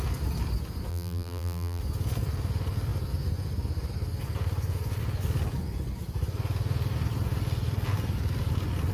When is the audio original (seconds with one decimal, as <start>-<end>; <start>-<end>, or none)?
0.0-0.9; 1.8-8.9